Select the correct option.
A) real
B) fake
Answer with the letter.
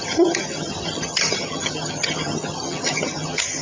B